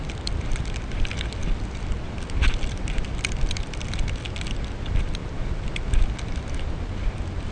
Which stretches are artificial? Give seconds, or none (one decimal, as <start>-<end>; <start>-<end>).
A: none